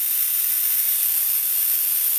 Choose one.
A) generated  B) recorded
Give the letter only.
B